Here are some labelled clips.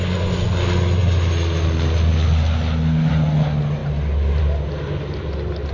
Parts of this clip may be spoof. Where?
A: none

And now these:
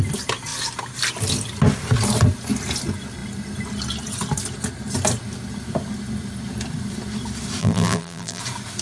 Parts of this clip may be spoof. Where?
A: 7.6-8.4 (vocoder, BigVGAN v2)